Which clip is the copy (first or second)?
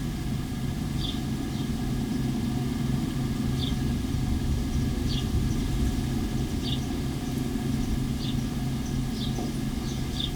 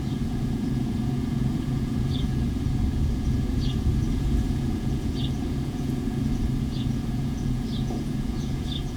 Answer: second